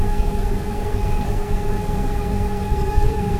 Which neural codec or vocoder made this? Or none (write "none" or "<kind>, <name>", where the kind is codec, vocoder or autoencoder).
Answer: codec, SNAC